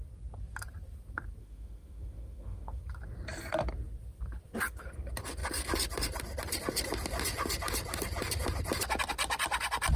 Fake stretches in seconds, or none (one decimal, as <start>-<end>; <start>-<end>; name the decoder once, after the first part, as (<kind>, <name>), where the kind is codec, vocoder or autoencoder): 1.4-2.8 (autoencoder, DAC-VAE)